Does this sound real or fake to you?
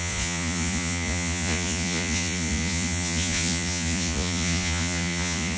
fake